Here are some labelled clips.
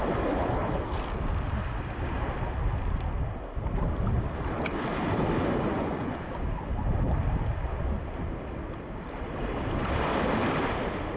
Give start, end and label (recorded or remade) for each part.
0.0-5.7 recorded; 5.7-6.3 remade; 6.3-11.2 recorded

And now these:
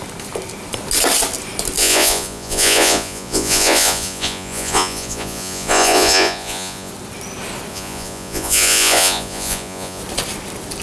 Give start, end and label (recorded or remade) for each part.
0.0-1.8 recorded; 1.8-6.9 remade; 6.9-7.7 recorded; 7.7-10.0 remade; 10.0-10.8 recorded